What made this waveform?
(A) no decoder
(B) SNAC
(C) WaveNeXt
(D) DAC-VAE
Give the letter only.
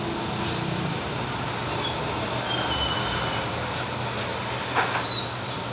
A